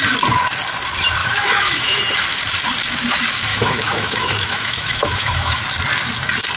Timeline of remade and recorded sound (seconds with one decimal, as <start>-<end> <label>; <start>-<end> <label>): 0.0-1.2 recorded; 1.2-2.0 remade; 2.0-3.5 recorded; 3.5-5.6 remade; 5.6-6.6 recorded